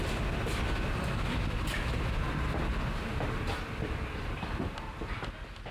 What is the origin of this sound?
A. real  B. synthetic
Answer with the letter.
A